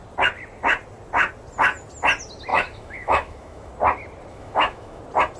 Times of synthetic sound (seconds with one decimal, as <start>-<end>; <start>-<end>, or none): 2.5-3.7; 4.3-5.0